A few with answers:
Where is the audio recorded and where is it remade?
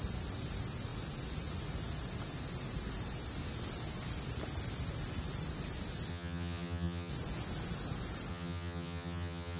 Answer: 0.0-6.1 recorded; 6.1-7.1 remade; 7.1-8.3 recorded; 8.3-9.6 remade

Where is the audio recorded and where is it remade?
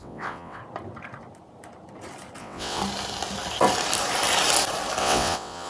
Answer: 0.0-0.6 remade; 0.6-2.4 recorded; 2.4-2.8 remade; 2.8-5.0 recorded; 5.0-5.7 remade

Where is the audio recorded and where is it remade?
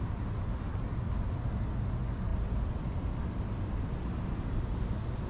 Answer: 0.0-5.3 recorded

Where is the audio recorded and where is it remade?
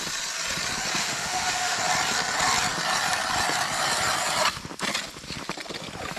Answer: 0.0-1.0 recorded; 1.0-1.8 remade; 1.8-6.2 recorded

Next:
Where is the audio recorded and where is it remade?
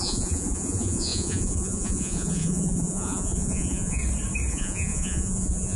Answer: 0.0-4.0 remade; 4.0-4.5 recorded; 4.5-5.8 remade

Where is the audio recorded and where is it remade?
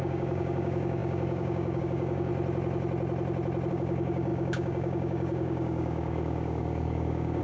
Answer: 0.0-2.3 remade; 2.3-3.7 recorded; 3.7-7.4 remade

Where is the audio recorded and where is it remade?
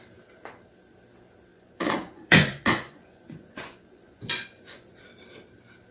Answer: 0.0-1.5 recorded; 1.5-5.0 remade; 5.0-5.9 recorded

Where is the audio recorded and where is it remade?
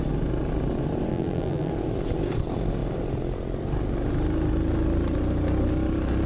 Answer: 0.0-1.1 recorded; 1.1-1.7 remade; 1.7-6.3 recorded